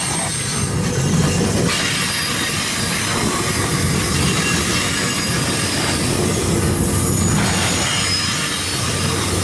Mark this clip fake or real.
real